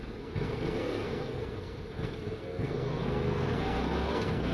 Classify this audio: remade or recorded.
remade